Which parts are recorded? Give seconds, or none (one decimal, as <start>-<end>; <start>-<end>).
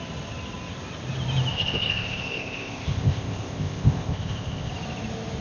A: 0.0-1.5; 4.7-5.4